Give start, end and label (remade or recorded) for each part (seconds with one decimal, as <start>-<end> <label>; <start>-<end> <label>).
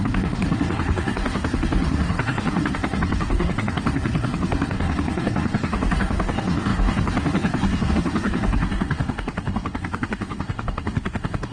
0.0-11.5 remade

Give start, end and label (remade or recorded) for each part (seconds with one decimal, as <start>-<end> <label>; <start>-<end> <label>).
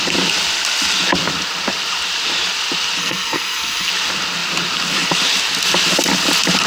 0.0-3.0 recorded; 3.0-3.9 remade; 3.9-6.7 recorded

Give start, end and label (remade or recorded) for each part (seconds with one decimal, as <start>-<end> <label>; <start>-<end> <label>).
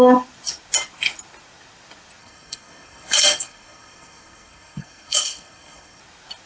0.0-2.2 recorded; 2.2-6.0 remade; 6.0-6.5 recorded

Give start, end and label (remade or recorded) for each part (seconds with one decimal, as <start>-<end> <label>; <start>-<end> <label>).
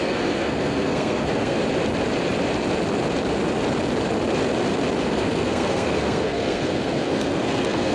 0.0-1.6 remade; 1.6-5.0 recorded; 5.0-7.9 remade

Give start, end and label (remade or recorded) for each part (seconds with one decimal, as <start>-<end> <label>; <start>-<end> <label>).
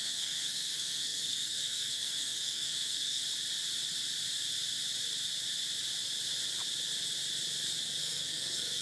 0.0-3.2 remade; 3.2-8.0 recorded; 8.0-8.8 remade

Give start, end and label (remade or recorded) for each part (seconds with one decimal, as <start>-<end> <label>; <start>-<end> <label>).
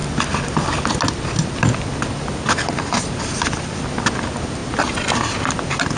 0.0-6.0 recorded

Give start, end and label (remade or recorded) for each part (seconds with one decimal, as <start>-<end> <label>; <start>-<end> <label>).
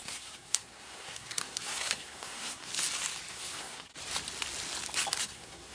0.0-2.7 remade; 2.7-3.3 recorded; 3.3-3.9 remade; 3.9-5.2 recorded; 5.2-5.7 remade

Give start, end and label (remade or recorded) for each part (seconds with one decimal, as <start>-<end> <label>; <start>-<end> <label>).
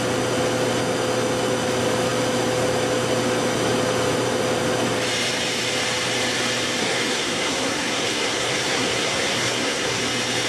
0.0-6.8 recorded; 6.8-10.0 remade; 10.0-10.5 recorded